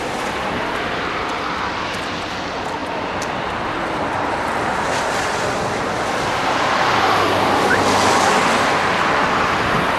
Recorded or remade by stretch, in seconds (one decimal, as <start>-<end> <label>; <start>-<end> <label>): 0.0-10.0 recorded